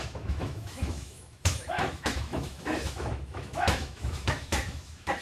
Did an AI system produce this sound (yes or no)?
yes